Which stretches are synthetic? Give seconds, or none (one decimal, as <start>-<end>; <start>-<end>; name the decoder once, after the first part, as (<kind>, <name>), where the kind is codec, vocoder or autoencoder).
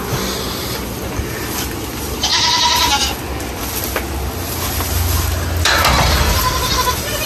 none